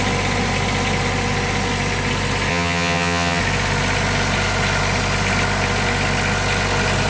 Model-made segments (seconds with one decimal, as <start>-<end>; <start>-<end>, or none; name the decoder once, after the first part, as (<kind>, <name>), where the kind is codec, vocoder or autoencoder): 2.5-3.4 (vocoder, HiFi-GAN)